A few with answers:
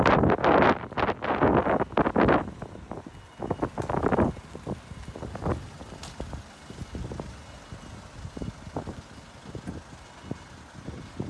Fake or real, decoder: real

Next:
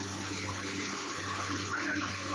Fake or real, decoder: fake, codec, HILCodec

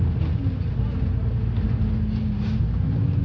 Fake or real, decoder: real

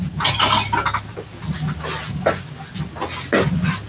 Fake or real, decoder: real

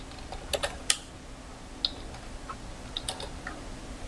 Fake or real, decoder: real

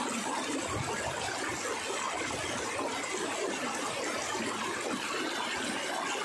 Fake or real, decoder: real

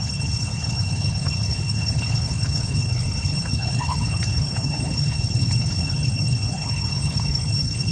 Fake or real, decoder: fake, codec, HILCodec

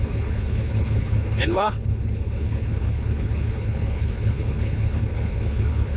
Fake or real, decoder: fake, codec, HILCodec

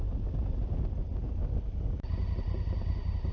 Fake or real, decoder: real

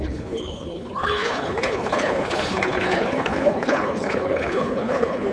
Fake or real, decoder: fake, codec, HILCodec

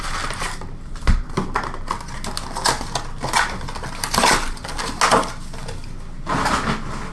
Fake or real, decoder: real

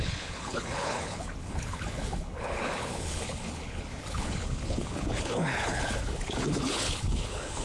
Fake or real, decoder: fake, codec, HILCodec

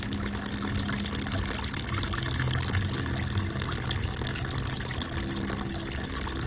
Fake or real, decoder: real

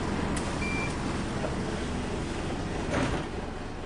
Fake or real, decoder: real